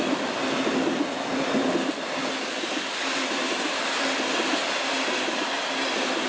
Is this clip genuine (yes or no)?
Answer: yes